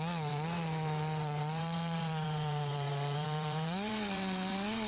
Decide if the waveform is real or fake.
fake